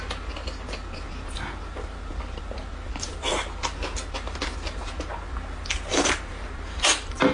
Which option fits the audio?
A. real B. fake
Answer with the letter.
A